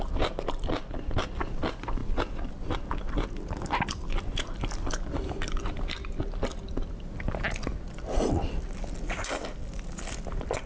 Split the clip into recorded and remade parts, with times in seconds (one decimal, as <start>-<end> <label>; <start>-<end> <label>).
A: 0.0-10.7 recorded